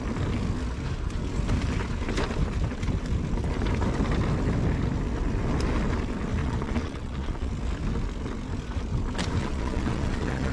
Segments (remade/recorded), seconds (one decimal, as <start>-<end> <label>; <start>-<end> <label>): 0.0-6.4 recorded; 6.4-7.5 remade; 7.5-9.4 recorded; 9.4-10.5 remade